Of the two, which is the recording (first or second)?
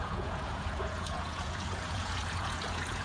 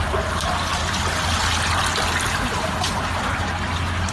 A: second